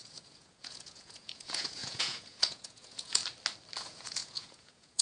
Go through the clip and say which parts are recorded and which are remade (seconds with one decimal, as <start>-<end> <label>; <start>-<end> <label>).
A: 0.0-3.2 remade; 3.2-3.8 recorded; 3.8-5.0 remade